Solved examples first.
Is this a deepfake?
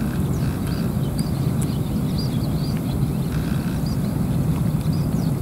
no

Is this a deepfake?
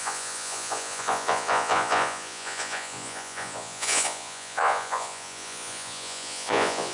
yes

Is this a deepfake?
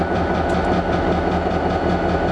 no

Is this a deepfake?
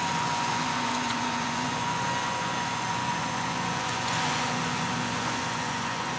yes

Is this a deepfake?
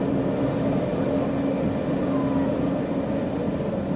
no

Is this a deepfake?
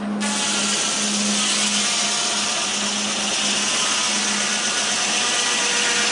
no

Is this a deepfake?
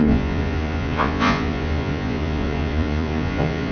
yes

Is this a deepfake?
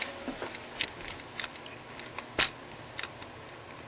no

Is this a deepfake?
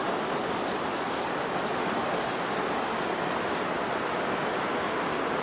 no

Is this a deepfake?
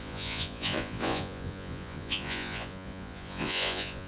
yes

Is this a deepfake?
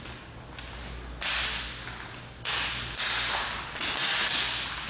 no